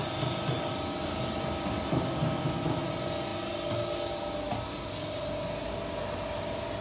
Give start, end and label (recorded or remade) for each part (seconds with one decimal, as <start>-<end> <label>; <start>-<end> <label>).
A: 0.0-6.8 recorded

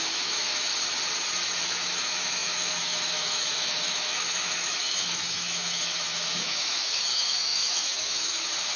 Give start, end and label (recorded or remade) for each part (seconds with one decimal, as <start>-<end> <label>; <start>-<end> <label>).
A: 0.0-0.7 remade; 0.7-1.6 recorded; 1.6-8.8 remade

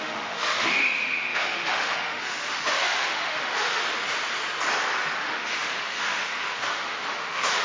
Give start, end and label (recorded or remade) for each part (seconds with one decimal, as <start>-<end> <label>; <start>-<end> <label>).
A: 0.0-3.8 remade; 3.8-5.2 recorded; 5.2-7.6 remade

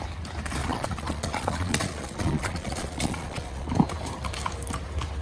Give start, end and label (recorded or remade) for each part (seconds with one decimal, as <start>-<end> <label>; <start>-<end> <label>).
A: 0.0-0.6 recorded; 0.6-3.7 remade; 3.7-5.2 recorded

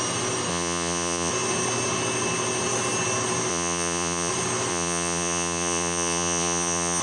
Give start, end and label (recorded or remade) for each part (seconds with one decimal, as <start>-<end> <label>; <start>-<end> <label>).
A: 0.0-0.5 recorded; 0.5-1.3 remade; 1.3-3.5 recorded; 3.5-4.3 remade; 4.3-4.7 recorded; 4.7-7.0 remade

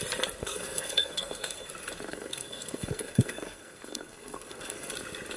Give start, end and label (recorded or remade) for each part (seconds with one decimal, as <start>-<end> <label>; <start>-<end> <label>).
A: 0.0-0.4 recorded; 0.4-1.7 remade; 1.7-2.1 recorded; 2.1-4.9 remade; 4.9-5.4 recorded